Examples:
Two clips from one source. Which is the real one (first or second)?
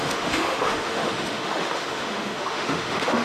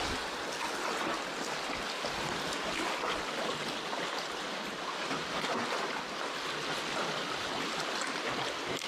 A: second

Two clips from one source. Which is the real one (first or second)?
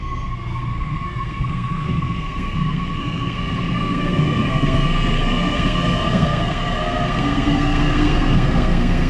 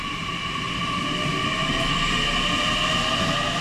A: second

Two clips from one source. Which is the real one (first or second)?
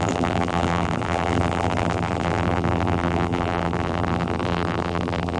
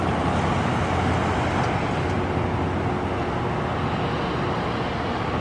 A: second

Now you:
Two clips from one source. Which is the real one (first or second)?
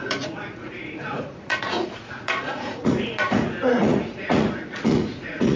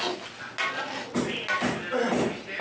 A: second